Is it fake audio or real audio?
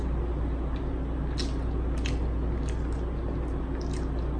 real